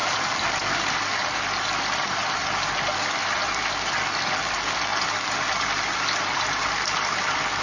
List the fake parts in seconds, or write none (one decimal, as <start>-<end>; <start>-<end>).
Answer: none